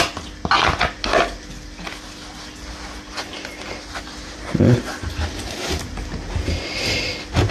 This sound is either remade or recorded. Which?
recorded